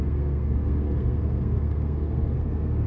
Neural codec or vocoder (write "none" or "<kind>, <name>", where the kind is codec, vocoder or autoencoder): codec, SNAC